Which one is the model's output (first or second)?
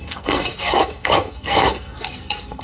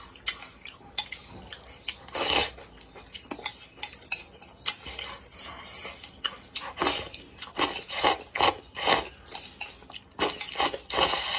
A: first